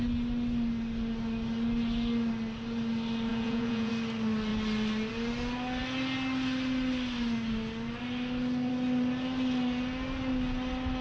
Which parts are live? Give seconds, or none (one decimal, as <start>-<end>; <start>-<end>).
0.0-3.3; 3.9-11.0